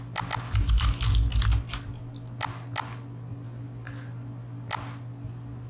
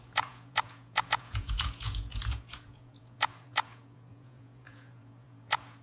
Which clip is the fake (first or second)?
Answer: second